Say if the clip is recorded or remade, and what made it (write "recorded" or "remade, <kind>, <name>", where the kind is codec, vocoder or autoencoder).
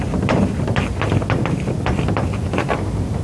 remade, vocoder, BigVGAN v2